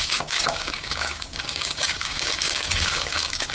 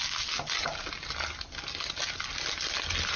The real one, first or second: second